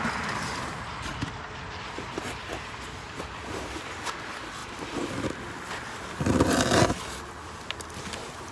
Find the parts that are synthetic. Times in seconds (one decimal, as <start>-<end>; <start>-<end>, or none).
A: none